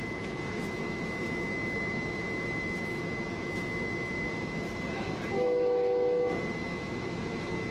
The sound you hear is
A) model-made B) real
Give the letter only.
A